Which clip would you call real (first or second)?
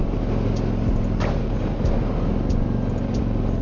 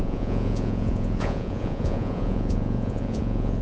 first